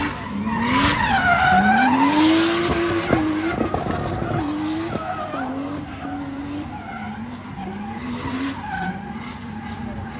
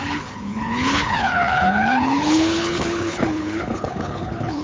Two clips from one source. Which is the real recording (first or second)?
first